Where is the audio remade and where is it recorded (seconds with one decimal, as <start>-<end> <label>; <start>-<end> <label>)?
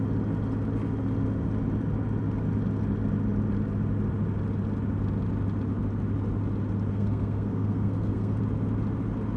0.0-6.9 recorded; 6.9-8.4 remade; 8.4-9.4 recorded